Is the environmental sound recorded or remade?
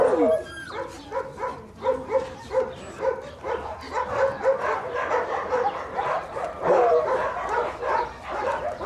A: recorded